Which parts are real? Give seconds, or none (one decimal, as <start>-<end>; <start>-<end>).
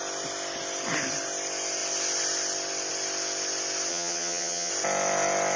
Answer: 0.0-3.9; 4.7-5.6